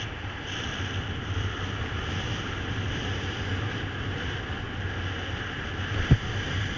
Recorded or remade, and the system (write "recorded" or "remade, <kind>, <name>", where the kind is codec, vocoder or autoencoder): recorded